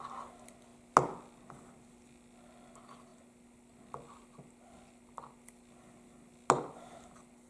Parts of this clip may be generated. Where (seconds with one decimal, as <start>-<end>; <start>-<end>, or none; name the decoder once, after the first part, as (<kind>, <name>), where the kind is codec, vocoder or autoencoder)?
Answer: none